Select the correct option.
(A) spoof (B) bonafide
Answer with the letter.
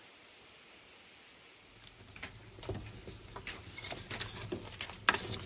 B